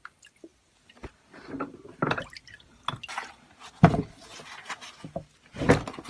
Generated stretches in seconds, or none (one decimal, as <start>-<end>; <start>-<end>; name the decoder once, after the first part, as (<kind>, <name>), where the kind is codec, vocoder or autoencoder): none